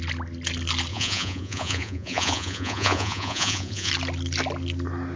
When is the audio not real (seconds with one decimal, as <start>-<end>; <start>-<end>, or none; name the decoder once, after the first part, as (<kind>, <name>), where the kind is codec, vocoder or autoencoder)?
0.9-3.9 (vocoder, Vocos)